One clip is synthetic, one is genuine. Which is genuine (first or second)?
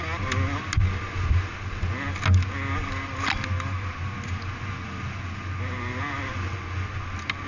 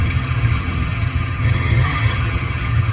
first